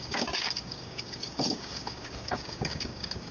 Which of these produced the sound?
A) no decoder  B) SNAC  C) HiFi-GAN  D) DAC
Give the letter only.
D